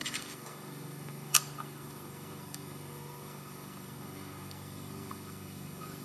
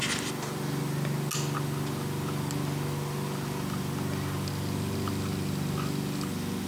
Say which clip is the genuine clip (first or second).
second